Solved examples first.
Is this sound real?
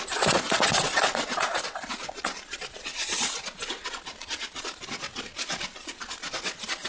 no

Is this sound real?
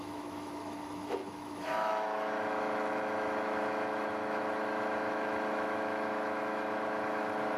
no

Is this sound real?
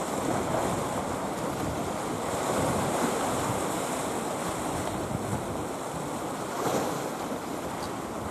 yes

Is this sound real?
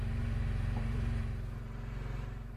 no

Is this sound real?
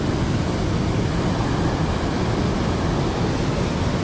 yes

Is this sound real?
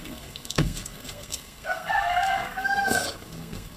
no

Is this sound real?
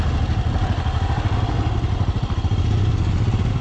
yes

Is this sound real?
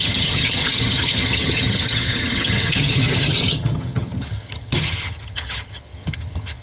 no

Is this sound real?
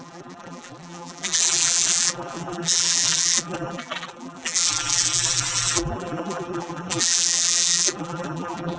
no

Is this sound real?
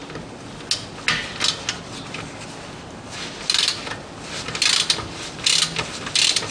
yes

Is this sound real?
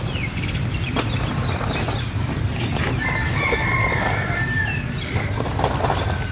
yes